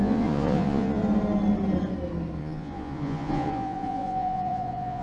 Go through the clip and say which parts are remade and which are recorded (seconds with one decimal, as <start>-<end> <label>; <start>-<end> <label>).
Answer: 0.0-1.0 remade; 1.0-2.4 recorded; 2.4-5.0 remade

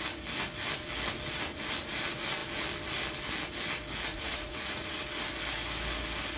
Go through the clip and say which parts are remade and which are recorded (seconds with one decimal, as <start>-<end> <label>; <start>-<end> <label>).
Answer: 0.0-4.1 recorded; 4.1-5.0 remade; 5.0-6.4 recorded

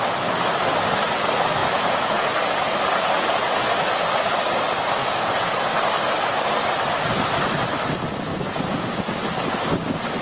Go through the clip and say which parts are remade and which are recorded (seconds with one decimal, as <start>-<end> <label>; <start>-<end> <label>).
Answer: 0.0-1.6 recorded; 1.6-2.2 remade; 2.2-5.0 recorded; 5.0-5.8 remade; 5.8-8.3 recorded; 8.3-9.0 remade; 9.0-10.2 recorded

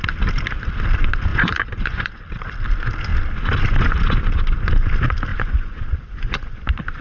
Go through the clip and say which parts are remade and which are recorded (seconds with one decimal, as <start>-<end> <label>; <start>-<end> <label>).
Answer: 0.0-1.3 recorded; 1.3-2.1 remade; 2.1-5.3 recorded; 5.3-6.6 remade; 6.6-7.0 recorded